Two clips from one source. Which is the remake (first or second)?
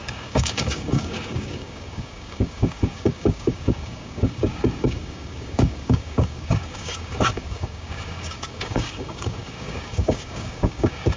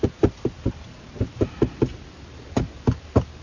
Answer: first